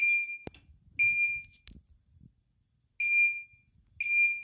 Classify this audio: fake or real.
real